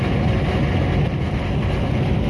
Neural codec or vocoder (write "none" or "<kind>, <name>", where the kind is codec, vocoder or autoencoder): none